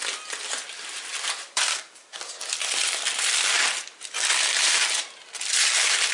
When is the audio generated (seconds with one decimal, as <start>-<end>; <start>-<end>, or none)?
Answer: 1.7-2.4